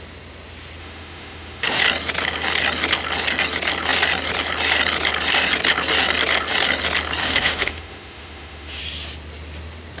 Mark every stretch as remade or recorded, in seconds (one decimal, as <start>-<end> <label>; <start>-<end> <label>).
0.0-0.8 recorded; 0.8-1.8 remade; 1.8-7.2 recorded; 7.2-8.8 remade; 8.8-10.0 recorded